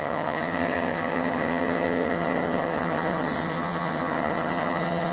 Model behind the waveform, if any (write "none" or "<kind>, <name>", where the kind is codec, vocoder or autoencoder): vocoder, HiFi-GAN